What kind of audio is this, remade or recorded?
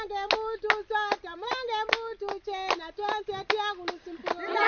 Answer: recorded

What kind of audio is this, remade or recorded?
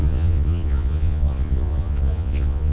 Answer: remade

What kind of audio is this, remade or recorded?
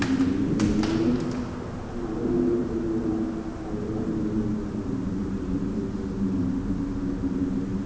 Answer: recorded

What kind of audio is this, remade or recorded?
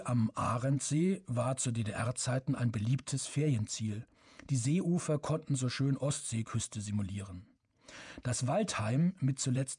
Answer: remade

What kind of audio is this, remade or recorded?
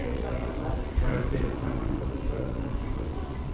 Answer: remade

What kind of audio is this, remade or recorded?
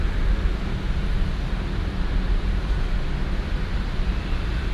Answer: recorded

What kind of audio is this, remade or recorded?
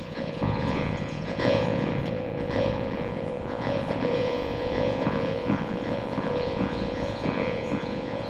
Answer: remade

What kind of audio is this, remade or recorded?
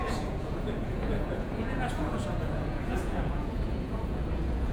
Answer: remade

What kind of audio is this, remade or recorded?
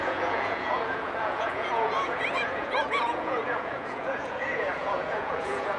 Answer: remade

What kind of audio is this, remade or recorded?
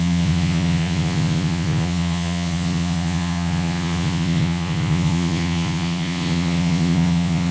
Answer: remade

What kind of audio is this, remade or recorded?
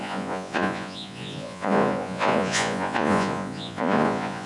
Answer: remade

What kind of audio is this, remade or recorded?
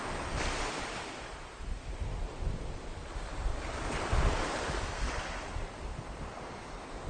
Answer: recorded